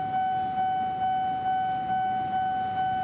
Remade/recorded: recorded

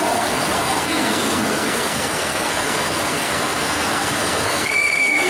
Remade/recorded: remade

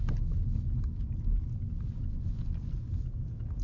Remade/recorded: recorded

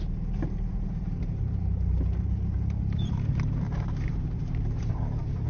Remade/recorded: remade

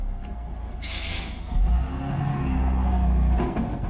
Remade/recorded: remade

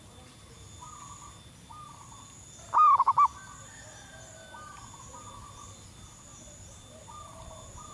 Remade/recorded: recorded